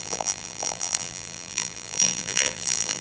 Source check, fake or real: fake